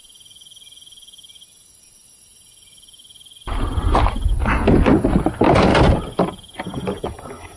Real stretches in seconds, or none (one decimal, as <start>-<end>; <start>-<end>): 0.0-7.6